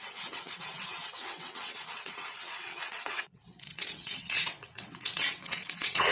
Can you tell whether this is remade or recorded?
remade